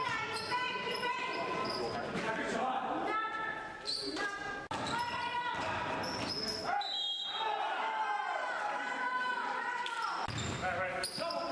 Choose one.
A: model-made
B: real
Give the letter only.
B